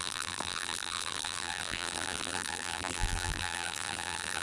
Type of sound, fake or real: fake